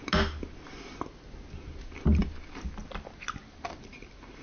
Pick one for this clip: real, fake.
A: real